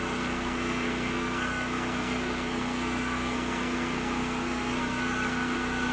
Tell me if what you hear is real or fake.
fake